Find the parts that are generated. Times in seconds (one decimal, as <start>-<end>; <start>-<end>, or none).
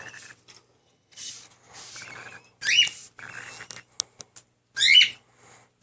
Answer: 0.8-1.3